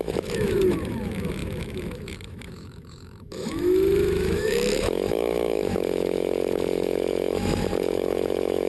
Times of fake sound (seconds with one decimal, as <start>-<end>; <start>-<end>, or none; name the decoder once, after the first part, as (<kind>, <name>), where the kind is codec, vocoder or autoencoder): 0.0-8.7 (autoencoder, DAC-VAE)